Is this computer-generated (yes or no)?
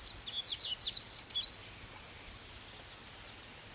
no